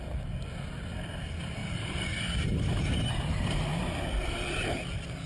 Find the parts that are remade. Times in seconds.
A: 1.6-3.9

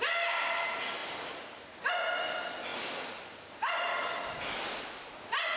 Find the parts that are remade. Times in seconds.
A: none